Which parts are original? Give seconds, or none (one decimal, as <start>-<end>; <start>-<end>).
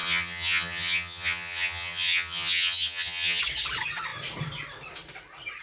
3.4-5.6